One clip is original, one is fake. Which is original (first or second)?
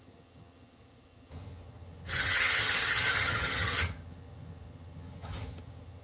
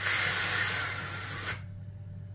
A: second